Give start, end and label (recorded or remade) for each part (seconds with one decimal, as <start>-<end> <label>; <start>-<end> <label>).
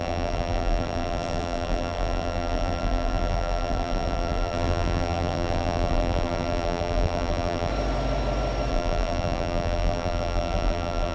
0.0-7.7 remade; 7.7-8.7 recorded; 8.7-11.1 remade